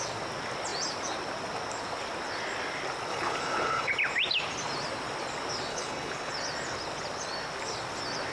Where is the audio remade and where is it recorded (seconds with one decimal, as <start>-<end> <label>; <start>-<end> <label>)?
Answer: 0.0-3.1 recorded; 3.1-3.9 remade; 3.9-5.7 recorded; 5.7-6.3 remade; 6.3-8.3 recorded